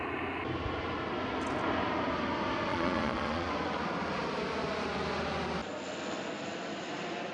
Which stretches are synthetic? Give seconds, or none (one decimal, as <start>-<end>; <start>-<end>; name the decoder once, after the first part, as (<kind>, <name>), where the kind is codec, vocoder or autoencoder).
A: 2.7-3.5 (vocoder, Vocos)

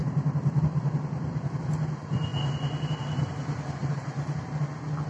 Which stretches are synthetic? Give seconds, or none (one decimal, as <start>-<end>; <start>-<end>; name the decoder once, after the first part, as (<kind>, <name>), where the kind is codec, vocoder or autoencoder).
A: 3.8-4.4 (vocoder, BigVGAN v2)

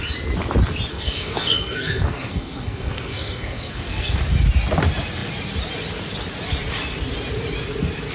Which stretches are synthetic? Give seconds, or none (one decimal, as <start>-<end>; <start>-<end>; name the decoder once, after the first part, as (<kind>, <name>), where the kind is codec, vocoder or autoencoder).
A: 0.9-4.2 (codec, SNAC)

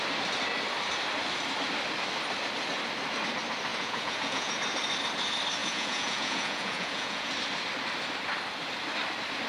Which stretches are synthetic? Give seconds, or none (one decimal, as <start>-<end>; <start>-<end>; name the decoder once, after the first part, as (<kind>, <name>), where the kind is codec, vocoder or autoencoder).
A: 3.7-4.5 (vocoder, Vocos); 5.6-7.3

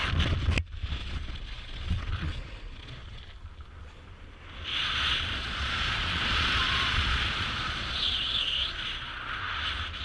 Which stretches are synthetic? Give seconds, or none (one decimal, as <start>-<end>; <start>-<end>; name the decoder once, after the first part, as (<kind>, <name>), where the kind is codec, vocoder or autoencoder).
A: 1.0-3.2 (vocoder, Vocos); 4.7-9.4

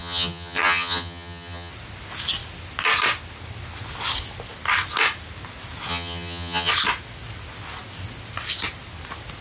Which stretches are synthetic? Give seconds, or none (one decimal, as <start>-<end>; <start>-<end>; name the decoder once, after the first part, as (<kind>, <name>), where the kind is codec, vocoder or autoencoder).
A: 0.0-1.7 (vocoder, HiFi-GAN); 5.9-6.7

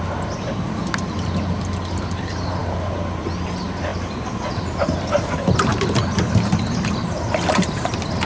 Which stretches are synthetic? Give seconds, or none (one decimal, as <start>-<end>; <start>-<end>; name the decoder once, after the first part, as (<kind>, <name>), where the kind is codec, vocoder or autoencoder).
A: none